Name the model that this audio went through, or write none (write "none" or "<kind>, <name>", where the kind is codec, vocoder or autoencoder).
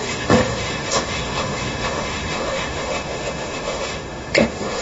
autoencoder, DAC-VAE